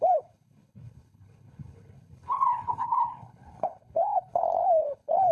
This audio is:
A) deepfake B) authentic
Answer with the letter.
A